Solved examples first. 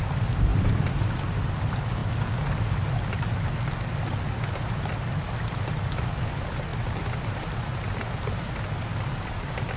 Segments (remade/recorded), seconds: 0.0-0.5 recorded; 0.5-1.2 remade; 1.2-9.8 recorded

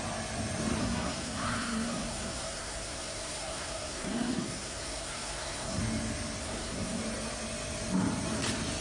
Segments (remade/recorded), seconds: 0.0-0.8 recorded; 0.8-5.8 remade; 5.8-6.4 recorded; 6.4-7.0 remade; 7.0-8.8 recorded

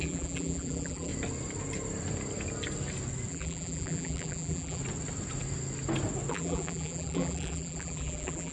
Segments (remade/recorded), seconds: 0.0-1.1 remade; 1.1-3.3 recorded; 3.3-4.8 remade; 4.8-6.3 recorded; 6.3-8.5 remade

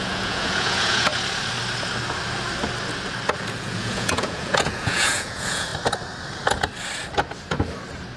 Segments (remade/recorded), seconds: 0.0-1.1 remade; 1.1-3.6 recorded; 3.6-5.7 remade; 5.7-8.2 recorded

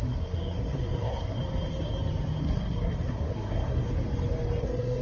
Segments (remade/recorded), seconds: 0.0-1.4 remade; 1.4-2.4 recorded; 2.4-3.9 remade; 3.9-4.6 recorded; 4.6-5.0 remade

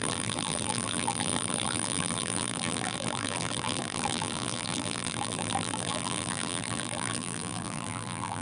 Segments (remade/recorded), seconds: 0.0-8.4 remade

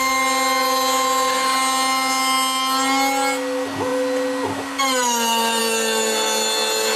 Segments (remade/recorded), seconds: 0.0-7.0 recorded

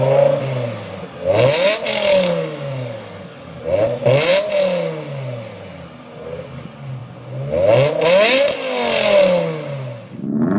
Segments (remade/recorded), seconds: 0.0-1.9 recorded; 1.9-3.6 remade; 3.6-10.6 recorded